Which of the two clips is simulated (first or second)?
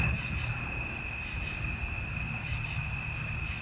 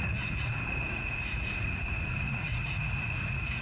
second